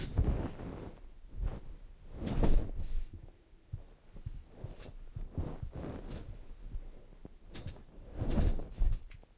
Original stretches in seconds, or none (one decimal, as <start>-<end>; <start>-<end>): 0.0-9.4